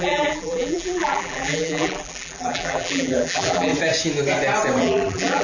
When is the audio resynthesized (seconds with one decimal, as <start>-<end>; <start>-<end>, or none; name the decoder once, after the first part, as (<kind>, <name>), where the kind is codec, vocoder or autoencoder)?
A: 0.0-3.7 (vocoder, BigVGAN v2); 4.8-5.4